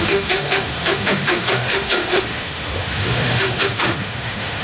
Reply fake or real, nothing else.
fake